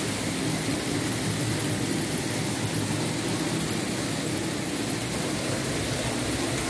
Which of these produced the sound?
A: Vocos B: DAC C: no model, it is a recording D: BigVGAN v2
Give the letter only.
C